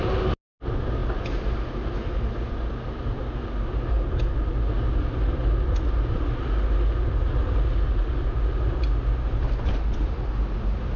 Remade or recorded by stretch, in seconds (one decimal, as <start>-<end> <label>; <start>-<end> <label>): 0.0-11.0 recorded